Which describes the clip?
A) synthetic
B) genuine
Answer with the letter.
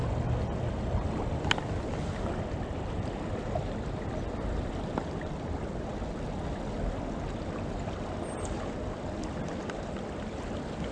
B